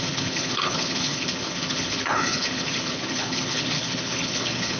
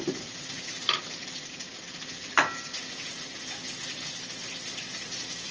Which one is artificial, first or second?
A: first